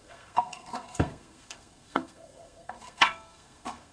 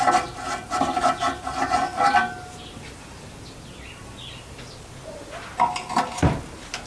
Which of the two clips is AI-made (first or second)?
first